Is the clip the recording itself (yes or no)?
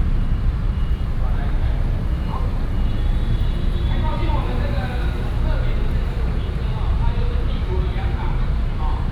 no